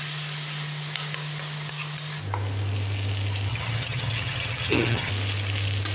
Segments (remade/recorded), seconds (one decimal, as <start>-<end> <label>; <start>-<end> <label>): 0.0-3.5 recorded; 3.5-5.1 remade; 5.1-5.9 recorded